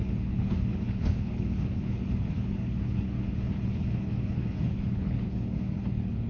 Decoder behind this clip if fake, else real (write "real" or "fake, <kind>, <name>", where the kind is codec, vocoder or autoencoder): fake, codec, HILCodec